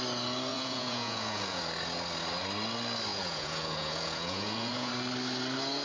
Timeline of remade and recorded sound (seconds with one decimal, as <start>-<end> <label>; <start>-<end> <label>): 0.0-0.5 recorded; 0.5-1.6 remade; 1.6-3.1 recorded; 3.1-4.9 remade; 4.9-5.8 recorded